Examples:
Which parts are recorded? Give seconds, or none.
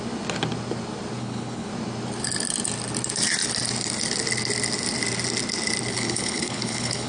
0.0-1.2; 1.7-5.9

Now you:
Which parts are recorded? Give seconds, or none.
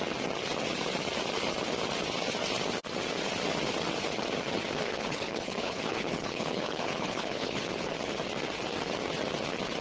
0.0-4.8; 7.6-9.8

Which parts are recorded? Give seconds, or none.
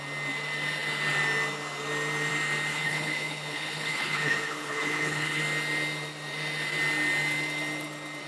0.0-2.7; 5.4-8.3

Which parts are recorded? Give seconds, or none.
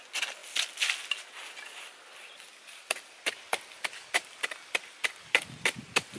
0.0-6.2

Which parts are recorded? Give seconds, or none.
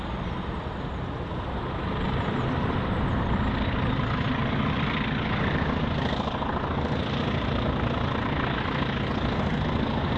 0.0-10.2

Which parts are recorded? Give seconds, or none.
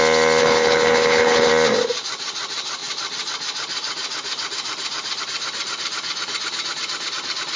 0.0-0.4; 1.5-7.6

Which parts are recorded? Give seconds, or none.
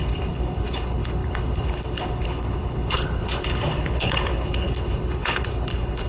none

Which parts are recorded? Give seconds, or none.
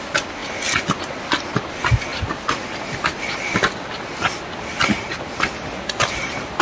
0.0-6.6